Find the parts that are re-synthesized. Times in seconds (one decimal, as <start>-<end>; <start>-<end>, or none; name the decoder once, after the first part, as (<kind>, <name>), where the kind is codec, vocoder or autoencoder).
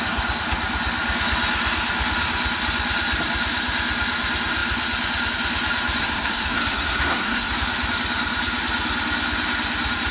6.0-7.5 (codec, SNAC)